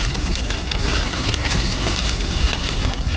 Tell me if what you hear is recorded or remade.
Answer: remade